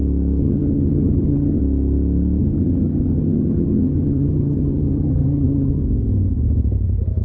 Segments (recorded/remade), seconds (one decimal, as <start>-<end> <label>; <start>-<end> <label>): 0.0-0.4 recorded; 0.4-1.6 remade; 1.6-2.4 recorded; 2.4-5.8 remade; 5.8-7.2 recorded